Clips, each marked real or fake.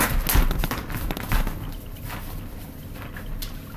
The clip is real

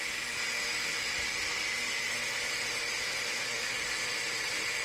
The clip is real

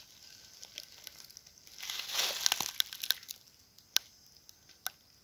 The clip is real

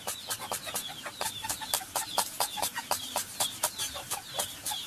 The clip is fake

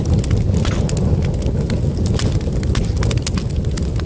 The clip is real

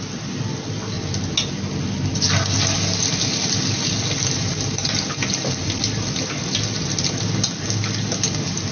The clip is real